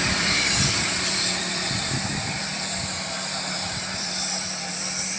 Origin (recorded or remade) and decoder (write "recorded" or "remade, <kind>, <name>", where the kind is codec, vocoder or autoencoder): remade, vocoder, BigVGAN v2